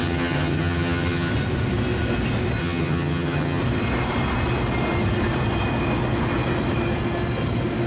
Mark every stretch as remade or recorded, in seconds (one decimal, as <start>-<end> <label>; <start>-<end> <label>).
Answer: 0.0-1.3 remade; 1.3-2.6 recorded; 2.6-3.6 remade; 3.6-7.9 recorded